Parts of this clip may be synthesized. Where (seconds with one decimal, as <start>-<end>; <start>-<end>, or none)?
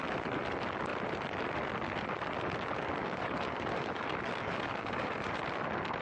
3.0-5.3